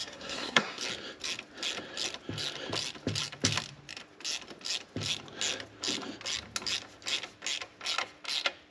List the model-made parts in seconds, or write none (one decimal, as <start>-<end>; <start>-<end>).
0.0-0.8